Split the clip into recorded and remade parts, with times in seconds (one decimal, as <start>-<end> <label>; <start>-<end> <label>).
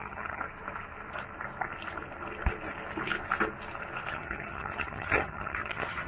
0.0-0.4 remade; 0.4-4.1 recorded; 4.1-6.1 remade